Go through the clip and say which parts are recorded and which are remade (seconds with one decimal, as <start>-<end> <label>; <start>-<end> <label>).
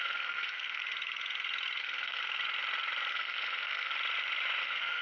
0.0-0.8 remade; 0.8-1.8 recorded; 1.8-2.2 remade; 2.2-3.1 recorded; 3.1-3.9 remade; 3.9-4.6 recorded; 4.6-5.0 remade